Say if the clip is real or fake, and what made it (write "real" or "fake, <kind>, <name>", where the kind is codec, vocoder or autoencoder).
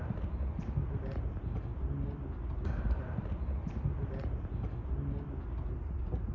real